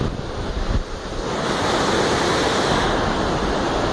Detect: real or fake real